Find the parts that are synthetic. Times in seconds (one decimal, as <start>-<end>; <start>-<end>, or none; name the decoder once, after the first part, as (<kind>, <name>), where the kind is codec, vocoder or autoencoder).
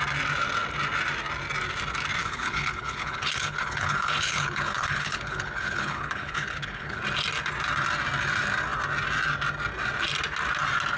2.2-7.0 (codec, HILCodec)